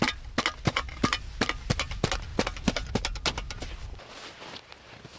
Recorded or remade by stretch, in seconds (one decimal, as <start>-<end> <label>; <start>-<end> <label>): 0.0-5.2 recorded